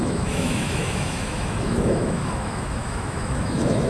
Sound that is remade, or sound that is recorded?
remade